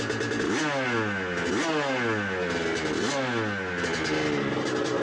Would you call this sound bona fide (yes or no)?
yes